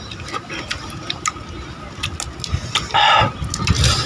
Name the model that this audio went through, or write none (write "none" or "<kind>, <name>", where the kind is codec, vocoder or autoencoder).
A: none